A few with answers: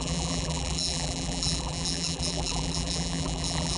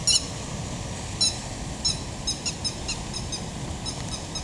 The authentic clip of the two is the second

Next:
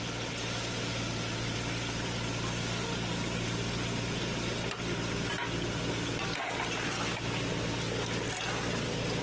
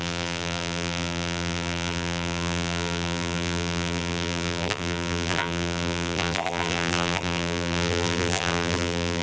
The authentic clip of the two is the first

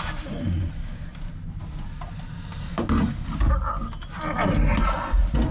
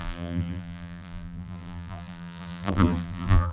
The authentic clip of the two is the first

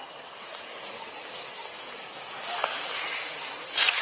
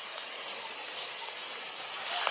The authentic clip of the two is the first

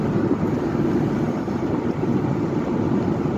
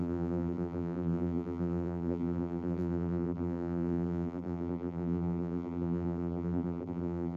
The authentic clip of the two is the first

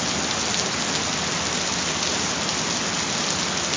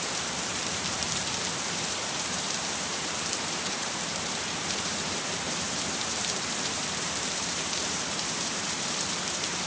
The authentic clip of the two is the first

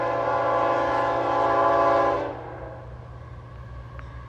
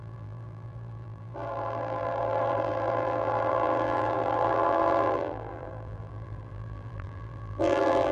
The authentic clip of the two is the first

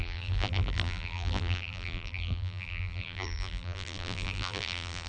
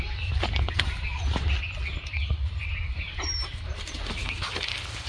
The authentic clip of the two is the second